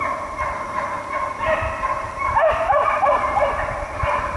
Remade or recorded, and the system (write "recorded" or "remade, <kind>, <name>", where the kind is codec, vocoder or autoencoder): recorded